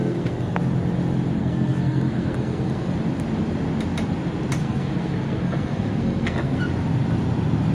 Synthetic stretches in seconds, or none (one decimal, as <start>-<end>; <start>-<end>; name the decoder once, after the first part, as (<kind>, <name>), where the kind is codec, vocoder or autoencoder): 0.0-0.6 (codec, SNAC); 1.4-2.9; 4.6-6.6